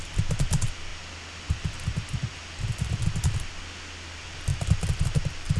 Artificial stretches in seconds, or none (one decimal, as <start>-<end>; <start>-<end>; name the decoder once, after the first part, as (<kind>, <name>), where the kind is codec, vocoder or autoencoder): none